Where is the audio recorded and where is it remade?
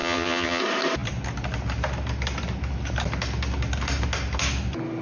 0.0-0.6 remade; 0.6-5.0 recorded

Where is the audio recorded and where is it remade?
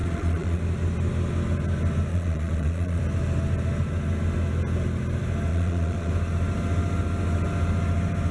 0.0-0.6 remade; 0.6-2.1 recorded; 2.1-3.0 remade; 3.0-5.5 recorded; 5.5-6.1 remade; 6.1-8.3 recorded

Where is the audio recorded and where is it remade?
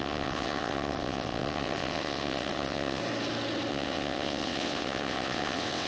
0.0-3.0 remade; 3.0-3.7 recorded; 3.7-5.9 remade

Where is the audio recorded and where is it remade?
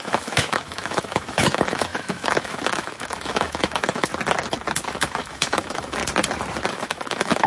0.0-4.1 remade; 4.1-4.8 recorded; 4.8-6.0 remade; 6.0-6.7 recorded; 6.7-7.5 remade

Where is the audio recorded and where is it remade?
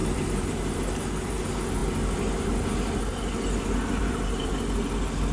0.0-1.4 remade; 1.4-4.0 recorded; 4.0-4.5 remade; 4.5-5.3 recorded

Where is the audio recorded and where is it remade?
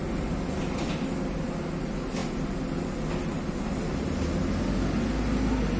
0.0-5.8 recorded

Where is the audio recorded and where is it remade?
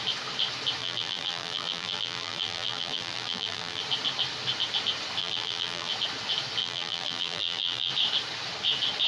0.0-0.8 recorded; 0.8-3.8 remade; 3.8-5.2 recorded; 5.2-5.9 remade; 5.9-6.6 recorded; 6.6-7.9 remade; 7.9-9.1 recorded